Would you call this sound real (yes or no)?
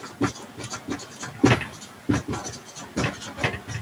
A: yes